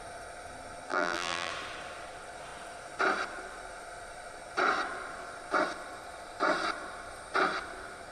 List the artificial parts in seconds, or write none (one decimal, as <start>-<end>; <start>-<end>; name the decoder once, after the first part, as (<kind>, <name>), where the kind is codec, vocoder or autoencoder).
0.9-1.5 (vocoder, BigVGAN v2)